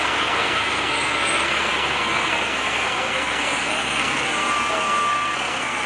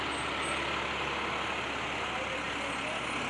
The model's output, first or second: first